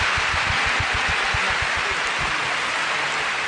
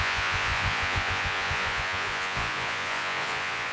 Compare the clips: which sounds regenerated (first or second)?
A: second